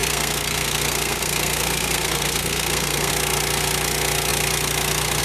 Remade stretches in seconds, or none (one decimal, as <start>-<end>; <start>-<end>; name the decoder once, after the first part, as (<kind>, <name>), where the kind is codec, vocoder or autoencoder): 0.0-3.1 (codec, SNAC)